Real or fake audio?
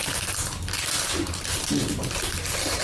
fake